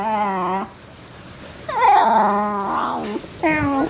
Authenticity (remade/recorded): recorded